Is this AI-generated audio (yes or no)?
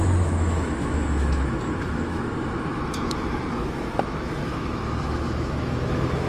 yes